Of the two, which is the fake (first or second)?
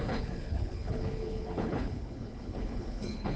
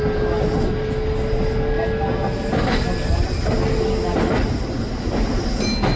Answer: first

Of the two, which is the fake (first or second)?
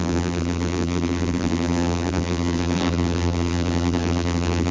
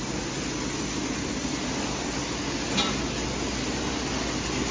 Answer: first